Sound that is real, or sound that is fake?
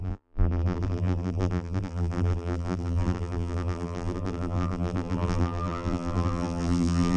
fake